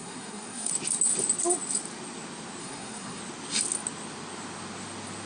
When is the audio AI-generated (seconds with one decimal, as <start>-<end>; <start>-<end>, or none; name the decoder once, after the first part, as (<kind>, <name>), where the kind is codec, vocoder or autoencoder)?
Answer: 0.0-0.7 (codec, SNAC); 2.6-3.2